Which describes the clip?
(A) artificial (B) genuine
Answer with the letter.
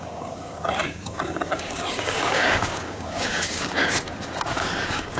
A